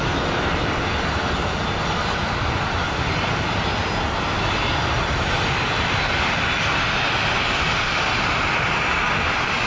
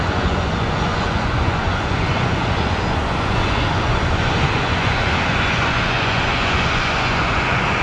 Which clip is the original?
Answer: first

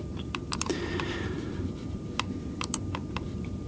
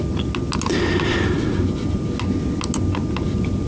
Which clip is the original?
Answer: second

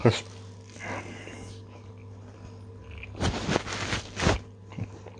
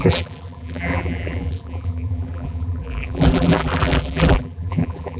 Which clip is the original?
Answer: first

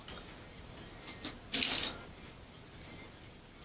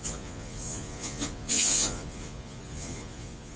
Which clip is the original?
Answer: first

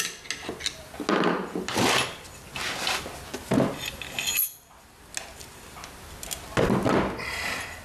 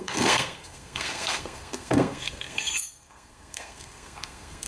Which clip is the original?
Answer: first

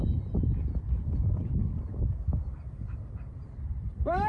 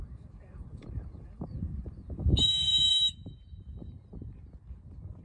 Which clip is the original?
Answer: first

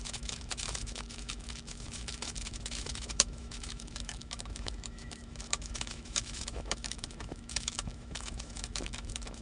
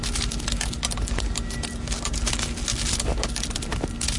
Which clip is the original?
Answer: second